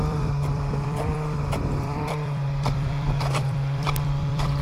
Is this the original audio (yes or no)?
no